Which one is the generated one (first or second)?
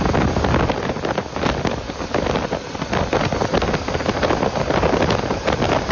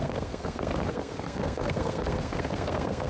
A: second